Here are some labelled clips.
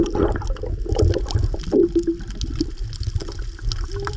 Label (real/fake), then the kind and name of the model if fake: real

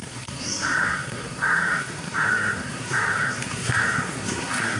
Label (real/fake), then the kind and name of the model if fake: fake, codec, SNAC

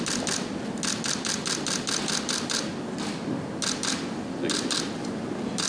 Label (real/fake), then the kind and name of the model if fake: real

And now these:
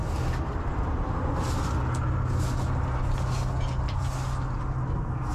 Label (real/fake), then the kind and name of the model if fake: real